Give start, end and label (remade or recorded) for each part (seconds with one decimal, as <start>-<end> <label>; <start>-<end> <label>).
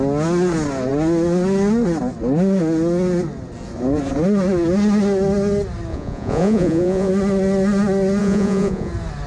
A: 0.0-5.9 recorded; 5.9-7.1 remade; 7.1-8.2 recorded; 8.2-8.9 remade; 8.9-9.3 recorded